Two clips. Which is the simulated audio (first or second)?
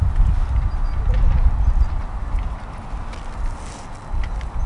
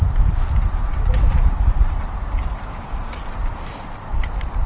second